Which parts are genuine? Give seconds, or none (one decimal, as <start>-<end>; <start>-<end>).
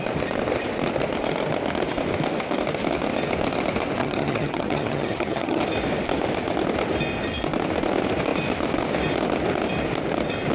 0.0-4.0; 5.6-10.5